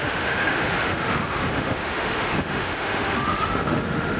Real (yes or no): no